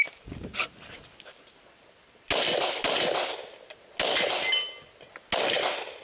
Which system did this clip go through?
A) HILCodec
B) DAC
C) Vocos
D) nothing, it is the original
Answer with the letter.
D